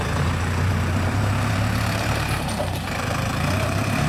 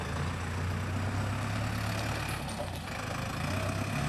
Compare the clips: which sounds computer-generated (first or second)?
first